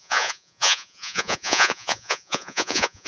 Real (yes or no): no